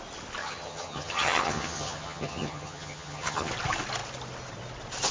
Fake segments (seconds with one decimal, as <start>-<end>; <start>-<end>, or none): 0.4-3.5

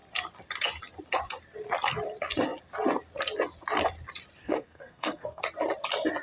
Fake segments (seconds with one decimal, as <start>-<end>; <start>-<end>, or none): 4.4-5.4

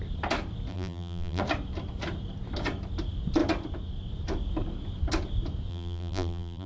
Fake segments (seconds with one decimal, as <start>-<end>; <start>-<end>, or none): 0.7-1.4; 5.7-6.7

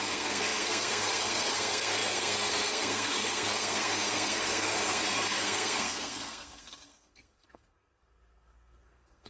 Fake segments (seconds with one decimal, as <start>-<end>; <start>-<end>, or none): 0.0-9.3

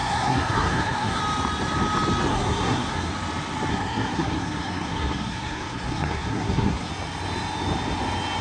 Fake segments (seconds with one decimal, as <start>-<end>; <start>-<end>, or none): 0.0-1.2; 2.3-3.1; 3.7-6.9

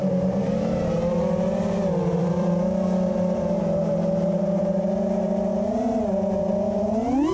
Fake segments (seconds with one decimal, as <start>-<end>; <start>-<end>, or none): 0.0-7.3